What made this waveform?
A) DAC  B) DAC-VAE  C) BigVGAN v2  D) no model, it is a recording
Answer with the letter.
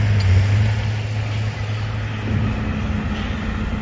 D